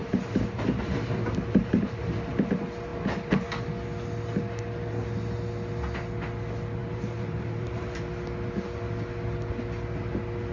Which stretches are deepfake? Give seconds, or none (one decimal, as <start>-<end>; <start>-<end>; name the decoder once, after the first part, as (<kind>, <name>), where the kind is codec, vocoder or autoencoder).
0.0-2.3 (vocoder, BigVGAN v2); 6.8-8.0